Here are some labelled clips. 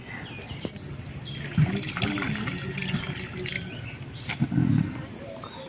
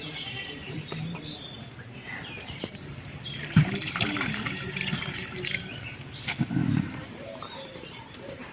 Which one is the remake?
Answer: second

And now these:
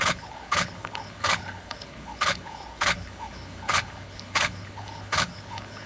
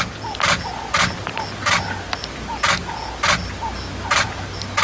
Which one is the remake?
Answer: first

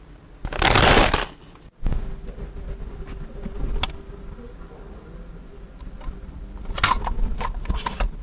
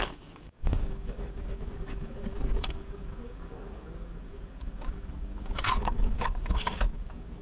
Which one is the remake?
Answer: second